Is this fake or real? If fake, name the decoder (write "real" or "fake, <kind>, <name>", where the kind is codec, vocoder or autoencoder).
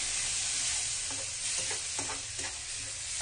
real